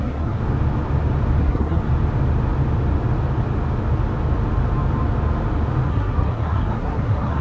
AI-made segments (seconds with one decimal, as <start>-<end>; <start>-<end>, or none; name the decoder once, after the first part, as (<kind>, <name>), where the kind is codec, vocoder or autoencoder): 0.0-0.4 (codec, SNAC); 1.4-1.8; 5.9-7.4